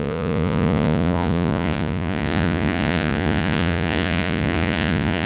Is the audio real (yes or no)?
no